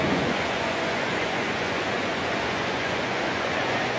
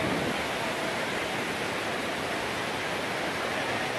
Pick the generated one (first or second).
first